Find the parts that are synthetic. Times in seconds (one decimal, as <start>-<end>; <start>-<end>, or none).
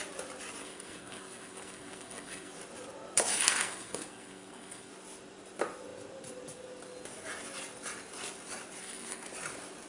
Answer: 0.6-2.5; 3.3-4.9; 8.8-9.3